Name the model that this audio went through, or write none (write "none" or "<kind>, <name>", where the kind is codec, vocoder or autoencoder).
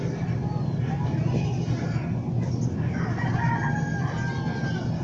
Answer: none